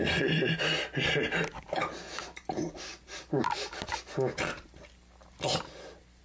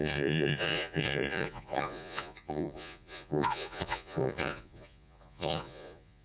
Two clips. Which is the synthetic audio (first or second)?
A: second